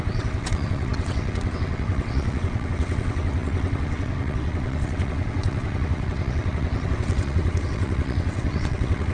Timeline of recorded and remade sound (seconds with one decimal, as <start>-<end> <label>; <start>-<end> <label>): 0.0-9.1 remade